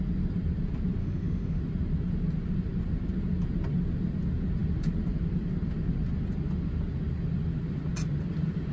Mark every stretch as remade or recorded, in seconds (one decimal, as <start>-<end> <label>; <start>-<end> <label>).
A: 0.0-1.0 recorded; 1.0-1.6 remade; 1.6-8.7 recorded